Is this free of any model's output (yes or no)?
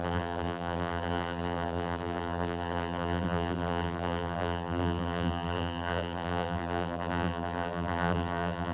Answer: no